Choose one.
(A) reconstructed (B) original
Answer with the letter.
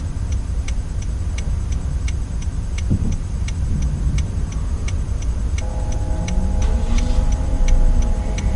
B